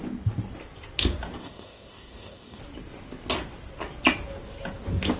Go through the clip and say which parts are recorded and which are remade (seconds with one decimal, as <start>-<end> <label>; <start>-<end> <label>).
0.0-1.4 recorded; 1.4-2.6 remade; 2.6-5.2 recorded